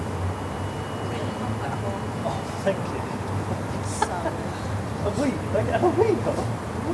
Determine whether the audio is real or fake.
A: real